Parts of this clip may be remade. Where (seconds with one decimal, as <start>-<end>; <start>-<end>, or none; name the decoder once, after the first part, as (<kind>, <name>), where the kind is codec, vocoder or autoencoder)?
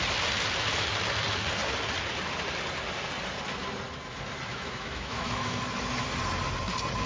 4.5-5.6 (autoencoder, DAC-VAE)